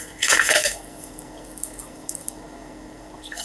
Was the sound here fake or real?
fake